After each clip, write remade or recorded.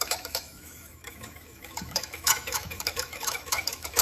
remade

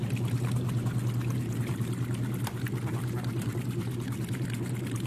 recorded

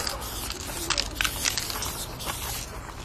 recorded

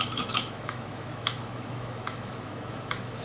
remade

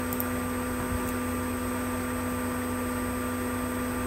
recorded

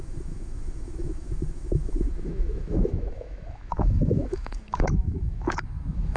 remade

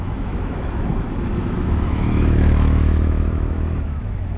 remade